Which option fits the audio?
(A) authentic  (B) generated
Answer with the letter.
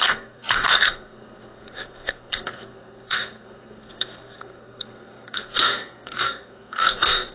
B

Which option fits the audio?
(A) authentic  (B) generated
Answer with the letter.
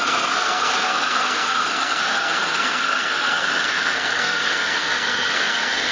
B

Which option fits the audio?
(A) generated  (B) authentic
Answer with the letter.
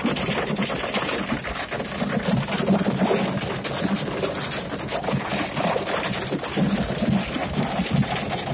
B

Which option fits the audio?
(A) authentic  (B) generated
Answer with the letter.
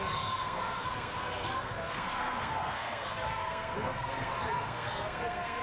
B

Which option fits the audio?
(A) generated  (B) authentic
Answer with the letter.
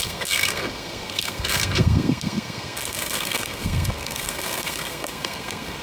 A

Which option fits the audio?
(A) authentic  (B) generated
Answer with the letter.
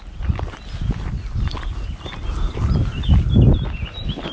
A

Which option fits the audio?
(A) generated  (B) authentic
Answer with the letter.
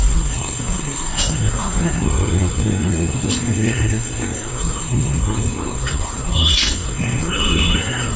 A